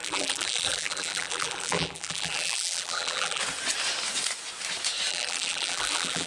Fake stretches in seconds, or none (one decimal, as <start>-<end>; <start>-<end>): 0.0-3.4; 5.1-6.3